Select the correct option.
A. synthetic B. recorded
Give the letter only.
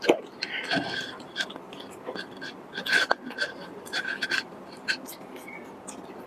A